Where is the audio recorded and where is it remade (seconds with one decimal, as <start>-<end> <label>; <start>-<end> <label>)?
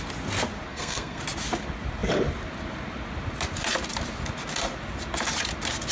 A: 0.0-0.7 recorded; 0.7-1.2 remade; 1.2-5.9 recorded